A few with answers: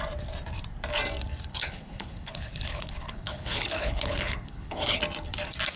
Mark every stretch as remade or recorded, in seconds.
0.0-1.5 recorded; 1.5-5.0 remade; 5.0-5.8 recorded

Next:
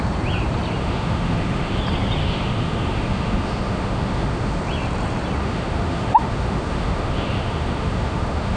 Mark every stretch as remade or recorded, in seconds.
0.0-0.8 recorded; 0.8-1.8 remade; 1.8-2.2 recorded; 2.2-4.6 remade; 4.6-5.4 recorded; 5.4-8.6 remade

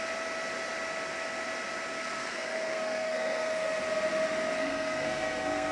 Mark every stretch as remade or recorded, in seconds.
0.0-2.0 recorded; 2.0-3.8 remade; 3.8-4.6 recorded; 4.6-5.7 remade

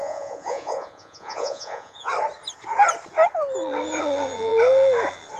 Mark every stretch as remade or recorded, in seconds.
0.0-2.1 remade; 2.1-5.4 recorded

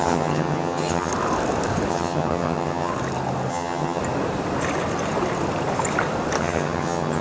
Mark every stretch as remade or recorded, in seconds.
0.0-1.1 remade; 1.1-1.9 recorded; 1.9-2.9 remade; 2.9-3.5 recorded; 3.5-4.0 remade; 4.0-6.4 recorded; 6.4-7.2 remade

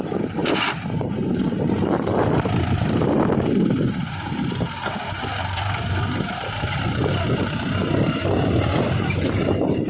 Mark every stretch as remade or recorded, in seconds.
0.0-0.4 recorded; 0.4-4.5 remade; 4.5-4.9 recorded; 4.9-8.3 remade; 8.3-9.9 recorded